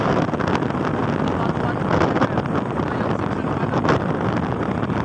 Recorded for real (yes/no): yes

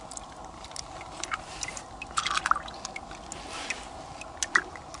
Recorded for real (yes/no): yes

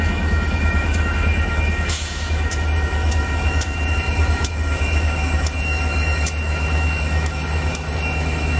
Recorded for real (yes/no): no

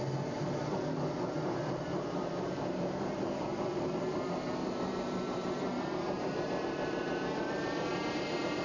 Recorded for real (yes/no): no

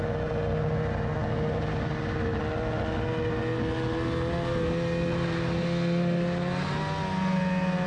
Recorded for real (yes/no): yes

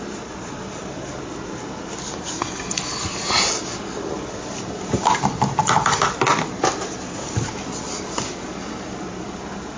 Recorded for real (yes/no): yes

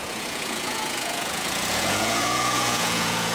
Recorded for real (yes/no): no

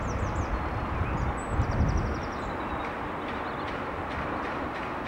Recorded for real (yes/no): yes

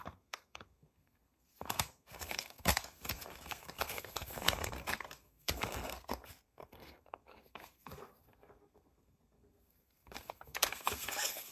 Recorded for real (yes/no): no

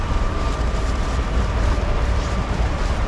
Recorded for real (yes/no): no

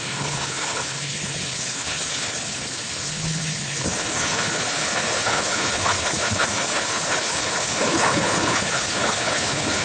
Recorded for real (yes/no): no